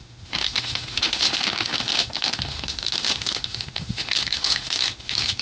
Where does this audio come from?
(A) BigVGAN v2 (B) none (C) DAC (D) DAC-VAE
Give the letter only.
D